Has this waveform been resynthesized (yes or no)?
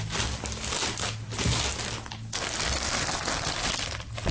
no